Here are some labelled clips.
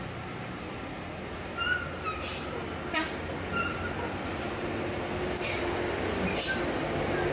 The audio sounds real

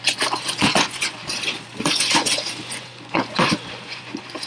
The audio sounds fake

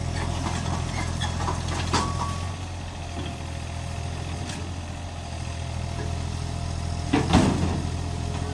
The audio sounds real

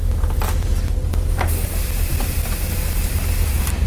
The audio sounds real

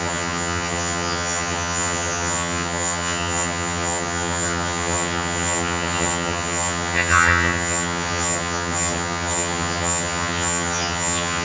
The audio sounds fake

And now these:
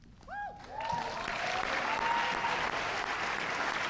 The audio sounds real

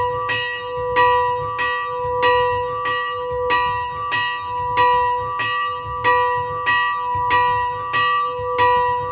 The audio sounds real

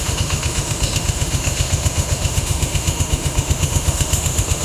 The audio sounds fake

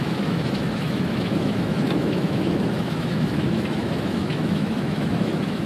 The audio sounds fake